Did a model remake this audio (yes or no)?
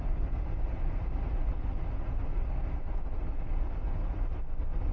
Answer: no